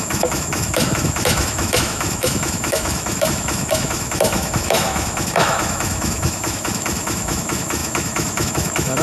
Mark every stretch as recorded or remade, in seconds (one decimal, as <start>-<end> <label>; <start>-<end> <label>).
0.0-9.0 remade